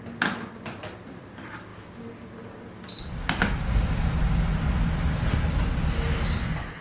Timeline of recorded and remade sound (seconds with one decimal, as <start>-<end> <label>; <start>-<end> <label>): 0.0-6.8 recorded